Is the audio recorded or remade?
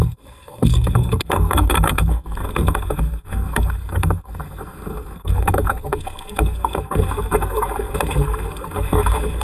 remade